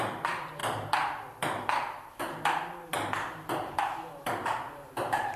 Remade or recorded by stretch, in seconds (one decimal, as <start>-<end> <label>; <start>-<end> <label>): 0.0-0.6 remade; 0.6-3.8 recorded; 3.8-5.4 remade